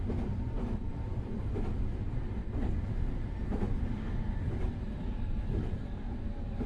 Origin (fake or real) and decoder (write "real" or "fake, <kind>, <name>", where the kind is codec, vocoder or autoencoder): fake, vocoder, BigVGAN v2